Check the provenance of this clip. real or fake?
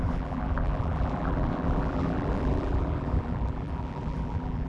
fake